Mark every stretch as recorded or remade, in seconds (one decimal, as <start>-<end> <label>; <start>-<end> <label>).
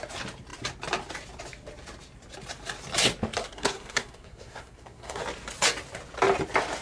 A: 0.0-3.4 recorded; 3.4-5.2 remade; 5.2-6.8 recorded